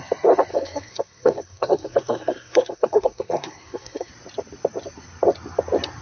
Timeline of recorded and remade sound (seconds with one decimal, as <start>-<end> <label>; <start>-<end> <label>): 0.0-0.5 recorded; 0.5-4.1 remade; 4.1-6.0 recorded

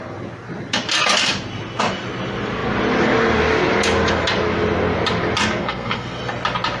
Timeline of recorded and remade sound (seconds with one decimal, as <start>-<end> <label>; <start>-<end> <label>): 0.0-5.6 recorded; 5.6-6.2 remade; 6.2-6.8 recorded